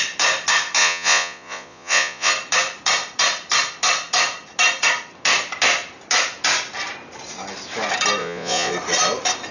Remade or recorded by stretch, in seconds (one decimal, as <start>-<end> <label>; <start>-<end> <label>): 0.0-0.8 recorded; 0.8-2.3 remade; 2.3-8.2 recorded; 8.2-8.7 remade; 8.7-9.5 recorded